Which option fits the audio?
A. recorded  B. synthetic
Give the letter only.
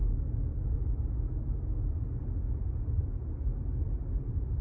A